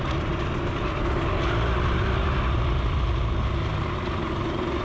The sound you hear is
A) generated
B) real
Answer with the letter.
B